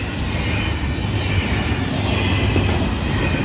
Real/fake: real